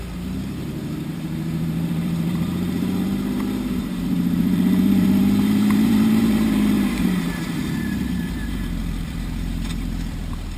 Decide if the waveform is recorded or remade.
remade